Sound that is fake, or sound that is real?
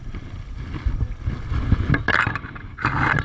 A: real